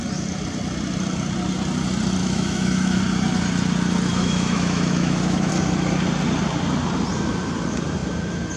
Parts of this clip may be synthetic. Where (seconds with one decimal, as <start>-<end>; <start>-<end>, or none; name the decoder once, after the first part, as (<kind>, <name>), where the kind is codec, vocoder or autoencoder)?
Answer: 2.2-3.0 (autoencoder, DAC-VAE); 4.1-5.5

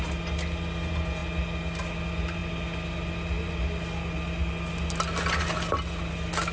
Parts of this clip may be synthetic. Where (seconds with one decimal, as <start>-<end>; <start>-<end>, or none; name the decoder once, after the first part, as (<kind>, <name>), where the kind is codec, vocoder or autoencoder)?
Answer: none

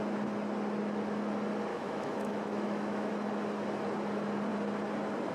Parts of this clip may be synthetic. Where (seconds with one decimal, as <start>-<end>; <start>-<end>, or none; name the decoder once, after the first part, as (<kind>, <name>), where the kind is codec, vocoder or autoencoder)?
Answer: 1.7-3.1 (autoencoder, DAC-VAE)

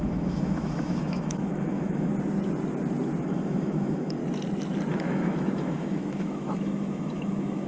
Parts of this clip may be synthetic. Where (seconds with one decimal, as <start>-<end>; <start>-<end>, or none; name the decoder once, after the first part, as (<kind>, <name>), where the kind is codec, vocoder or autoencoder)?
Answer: 0.0-2.1 (autoencoder, DAC-VAE); 3.2-4.2; 4.9-7.7

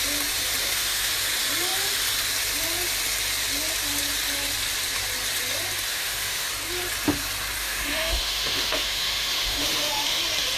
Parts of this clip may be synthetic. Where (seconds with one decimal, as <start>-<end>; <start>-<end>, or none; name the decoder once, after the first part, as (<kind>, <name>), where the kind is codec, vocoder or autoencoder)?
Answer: 0.6-1.1 (autoencoder, DAC-VAE); 5.9-6.5; 7.6-10.2

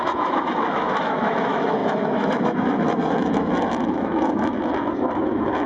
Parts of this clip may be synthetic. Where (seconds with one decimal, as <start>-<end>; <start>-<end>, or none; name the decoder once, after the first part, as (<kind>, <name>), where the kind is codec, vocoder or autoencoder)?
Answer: 0.0-5.7 (autoencoder, DAC-VAE)